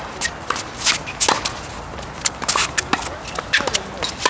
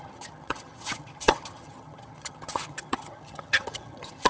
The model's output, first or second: second